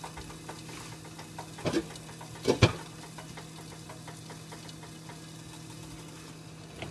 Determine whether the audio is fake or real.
real